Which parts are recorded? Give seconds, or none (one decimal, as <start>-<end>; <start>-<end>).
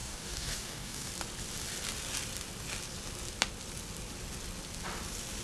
1.1-5.4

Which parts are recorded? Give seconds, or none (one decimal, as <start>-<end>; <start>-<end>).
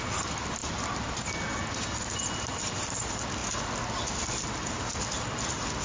0.0-5.8